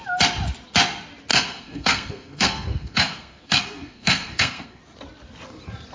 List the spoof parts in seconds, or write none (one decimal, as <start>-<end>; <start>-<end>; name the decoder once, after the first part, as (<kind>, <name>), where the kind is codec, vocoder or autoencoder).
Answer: 1.3-4.8 (codec, SNAC)